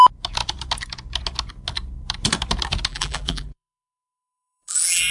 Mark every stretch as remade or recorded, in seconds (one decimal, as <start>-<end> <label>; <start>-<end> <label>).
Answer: 0.0-2.9 recorded; 2.9-5.1 remade